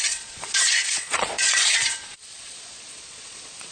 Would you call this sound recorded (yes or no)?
no